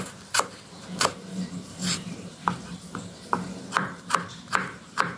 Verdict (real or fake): fake